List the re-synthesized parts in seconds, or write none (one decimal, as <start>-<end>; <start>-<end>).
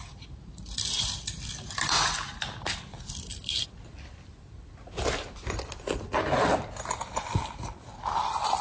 0.0-0.9; 3.3-8.6